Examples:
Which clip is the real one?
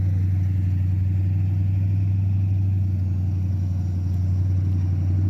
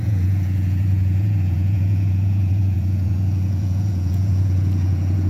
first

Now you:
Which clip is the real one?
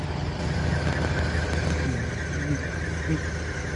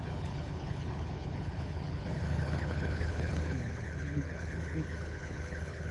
first